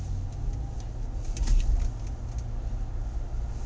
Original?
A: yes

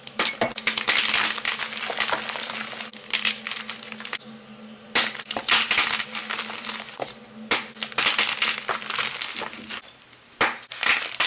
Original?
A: yes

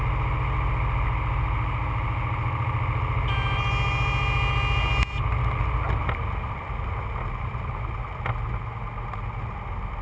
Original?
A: yes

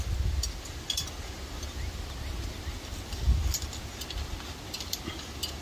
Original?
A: yes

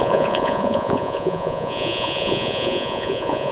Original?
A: no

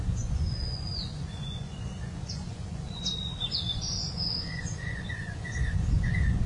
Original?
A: no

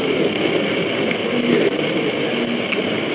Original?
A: yes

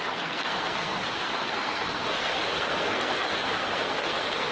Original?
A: no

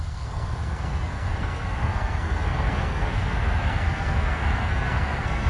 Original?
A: no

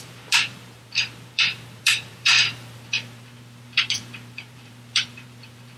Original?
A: no